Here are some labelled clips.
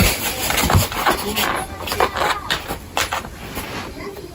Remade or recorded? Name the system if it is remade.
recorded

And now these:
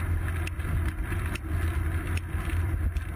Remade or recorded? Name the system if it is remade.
recorded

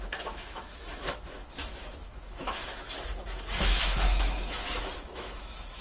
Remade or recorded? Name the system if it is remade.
remade, autoencoder, DAC-VAE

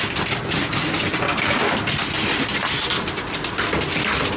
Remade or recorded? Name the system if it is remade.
recorded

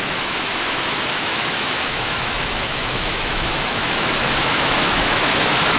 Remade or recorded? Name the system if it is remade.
remade, autoencoder, DAC-VAE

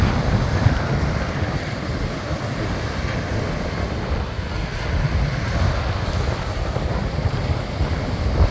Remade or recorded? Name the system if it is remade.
recorded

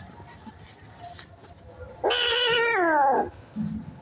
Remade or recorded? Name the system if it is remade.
recorded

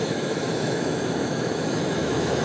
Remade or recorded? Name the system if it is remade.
remade, autoencoder, DAC-VAE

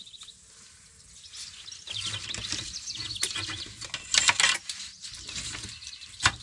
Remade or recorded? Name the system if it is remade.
recorded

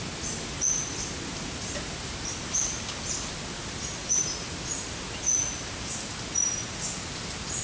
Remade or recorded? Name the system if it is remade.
recorded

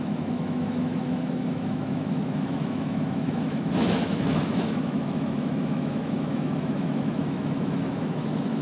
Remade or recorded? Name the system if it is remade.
remade, autoencoder, DAC-VAE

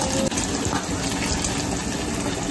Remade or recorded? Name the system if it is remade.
recorded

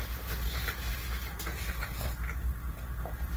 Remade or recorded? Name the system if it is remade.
recorded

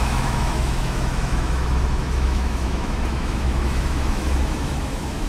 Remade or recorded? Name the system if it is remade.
remade, autoencoder, DAC-VAE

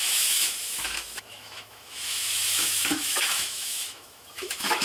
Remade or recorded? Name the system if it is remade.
remade, autoencoder, DAC-VAE